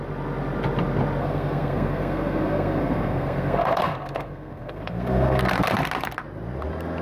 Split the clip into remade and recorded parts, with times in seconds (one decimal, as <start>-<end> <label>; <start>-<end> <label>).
0.0-1.2 recorded; 1.2-5.4 remade; 5.4-7.0 recorded